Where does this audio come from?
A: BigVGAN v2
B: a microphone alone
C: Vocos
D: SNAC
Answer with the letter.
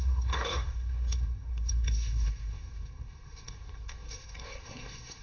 D